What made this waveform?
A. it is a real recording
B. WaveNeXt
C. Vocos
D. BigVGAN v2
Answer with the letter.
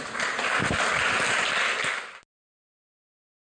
A